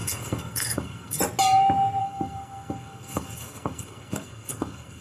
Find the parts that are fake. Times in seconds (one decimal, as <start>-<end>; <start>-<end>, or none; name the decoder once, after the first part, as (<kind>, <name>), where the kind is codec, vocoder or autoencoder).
0.0-1.2 (codec, SNAC); 2.0-5.0